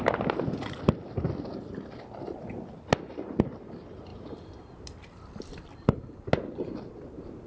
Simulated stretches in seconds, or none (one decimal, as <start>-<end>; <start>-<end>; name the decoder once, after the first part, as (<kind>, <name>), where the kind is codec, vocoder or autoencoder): none